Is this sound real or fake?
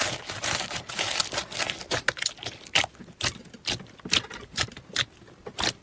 real